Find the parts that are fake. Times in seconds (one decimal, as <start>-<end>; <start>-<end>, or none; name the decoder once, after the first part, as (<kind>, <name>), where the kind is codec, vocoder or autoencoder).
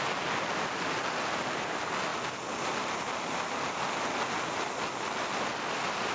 none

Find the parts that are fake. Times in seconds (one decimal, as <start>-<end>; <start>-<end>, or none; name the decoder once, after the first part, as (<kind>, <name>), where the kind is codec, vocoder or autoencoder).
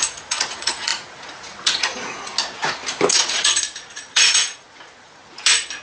0.0-2.3 (vocoder, Vocos); 3.1-5.2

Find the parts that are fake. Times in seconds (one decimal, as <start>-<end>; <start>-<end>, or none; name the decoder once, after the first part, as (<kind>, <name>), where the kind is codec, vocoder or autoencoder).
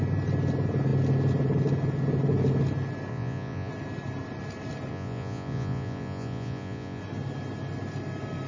3.1-3.7 (vocoder, Vocos); 4.9-7.0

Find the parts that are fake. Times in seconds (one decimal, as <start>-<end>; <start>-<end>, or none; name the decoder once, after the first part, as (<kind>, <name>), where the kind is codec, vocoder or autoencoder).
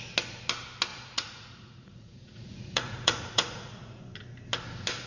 0.9-4.0 (vocoder, Vocos)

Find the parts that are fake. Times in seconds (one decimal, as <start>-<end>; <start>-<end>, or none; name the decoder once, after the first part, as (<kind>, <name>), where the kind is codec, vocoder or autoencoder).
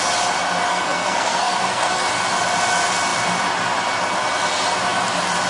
0.7-2.0 (codec, SNAC)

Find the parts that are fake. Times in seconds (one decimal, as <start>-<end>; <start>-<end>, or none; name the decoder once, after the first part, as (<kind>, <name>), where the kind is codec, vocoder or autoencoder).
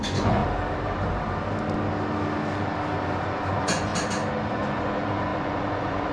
0.0-0.4 (vocoder, Vocos); 3.2-3.9; 4.5-6.1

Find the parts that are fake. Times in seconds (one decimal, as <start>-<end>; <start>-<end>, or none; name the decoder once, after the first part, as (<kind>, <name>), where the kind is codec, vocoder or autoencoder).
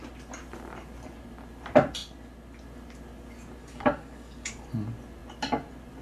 3.6-4.5 (codec, DAC)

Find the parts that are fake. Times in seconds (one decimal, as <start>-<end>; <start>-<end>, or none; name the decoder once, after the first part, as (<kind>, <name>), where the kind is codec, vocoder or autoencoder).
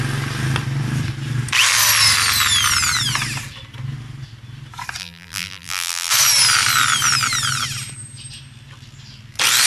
5.0-6.1 (vocoder, BigVGAN v2)